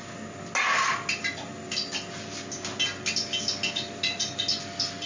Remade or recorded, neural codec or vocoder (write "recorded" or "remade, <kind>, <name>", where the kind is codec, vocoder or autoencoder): recorded